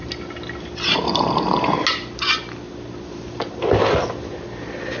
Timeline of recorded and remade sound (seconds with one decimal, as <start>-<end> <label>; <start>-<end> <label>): 0.0-5.0 recorded